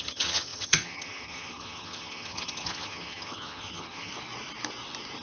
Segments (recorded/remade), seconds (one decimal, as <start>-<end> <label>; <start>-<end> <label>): 0.0-4.1 remade; 4.1-5.2 recorded